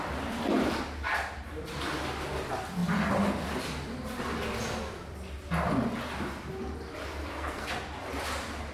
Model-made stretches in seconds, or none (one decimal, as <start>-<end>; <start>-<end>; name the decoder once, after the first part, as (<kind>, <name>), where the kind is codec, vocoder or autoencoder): 7.2-7.7 (codec, SNAC)